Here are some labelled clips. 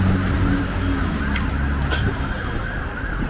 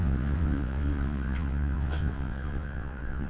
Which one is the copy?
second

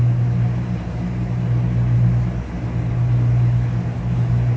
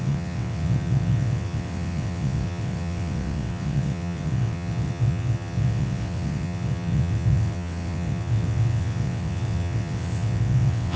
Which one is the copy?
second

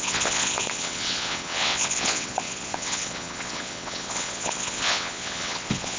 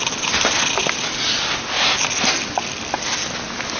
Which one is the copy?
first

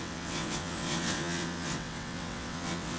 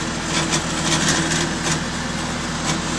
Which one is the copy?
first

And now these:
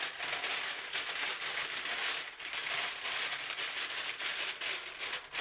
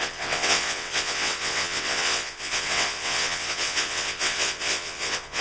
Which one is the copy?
second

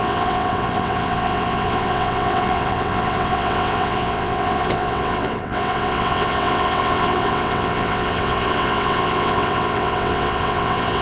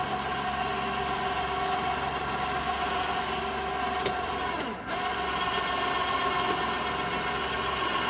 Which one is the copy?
first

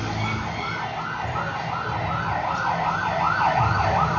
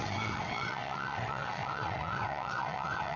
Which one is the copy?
second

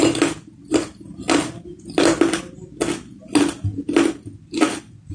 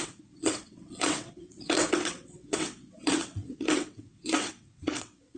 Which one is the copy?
second